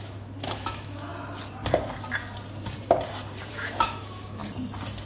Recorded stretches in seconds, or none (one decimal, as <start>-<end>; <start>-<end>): 1.1-3.5; 4.4-5.1